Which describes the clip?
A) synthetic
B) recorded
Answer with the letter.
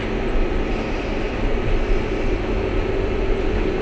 B